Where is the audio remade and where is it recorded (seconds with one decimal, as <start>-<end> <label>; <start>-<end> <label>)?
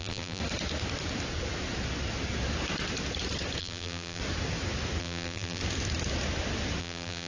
0.0-0.4 remade; 0.4-3.6 recorded; 3.6-4.2 remade; 4.2-5.0 recorded; 5.0-5.6 remade; 5.6-6.8 recorded; 6.8-7.3 remade